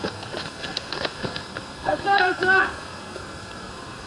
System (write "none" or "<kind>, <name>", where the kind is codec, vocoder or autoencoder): codec, SNAC